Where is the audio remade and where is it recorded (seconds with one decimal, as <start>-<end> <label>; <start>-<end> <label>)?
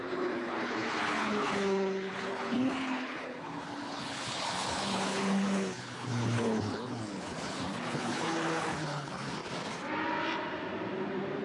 0.0-9.4 remade; 9.4-11.4 recorded